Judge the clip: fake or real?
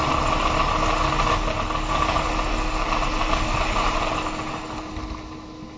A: real